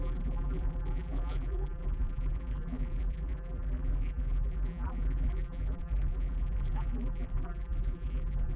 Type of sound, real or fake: fake